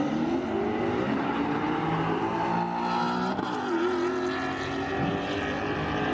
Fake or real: real